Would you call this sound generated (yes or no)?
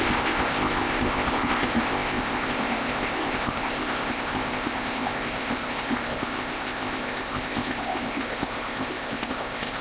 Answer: yes